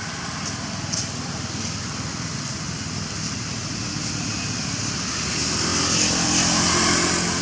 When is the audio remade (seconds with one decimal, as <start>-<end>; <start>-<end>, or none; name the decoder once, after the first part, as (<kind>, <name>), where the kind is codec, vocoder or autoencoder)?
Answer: none